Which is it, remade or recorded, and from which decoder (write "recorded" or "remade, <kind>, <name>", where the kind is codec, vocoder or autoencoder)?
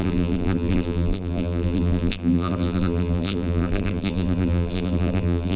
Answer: remade, vocoder, BigVGAN v2